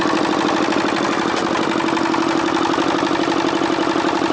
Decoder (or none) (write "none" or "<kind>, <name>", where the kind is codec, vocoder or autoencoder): none